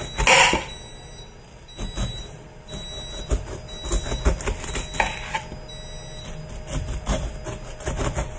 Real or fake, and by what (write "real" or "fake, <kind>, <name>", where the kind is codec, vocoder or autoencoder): real